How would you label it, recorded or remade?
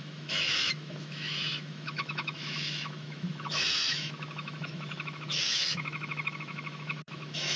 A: remade